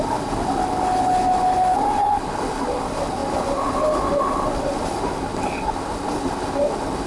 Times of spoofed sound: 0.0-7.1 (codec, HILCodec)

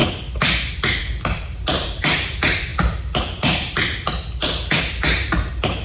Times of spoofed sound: 1.0-2.7 (vocoder, BigVGAN v2); 4.8-5.8